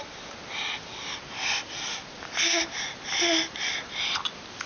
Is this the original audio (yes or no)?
yes